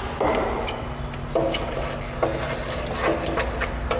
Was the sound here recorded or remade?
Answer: recorded